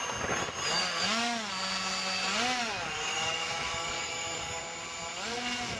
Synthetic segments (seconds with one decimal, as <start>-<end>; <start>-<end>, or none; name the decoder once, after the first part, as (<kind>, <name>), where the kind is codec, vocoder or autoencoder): 0.7-1.5 (codec, DAC); 2.6-4.6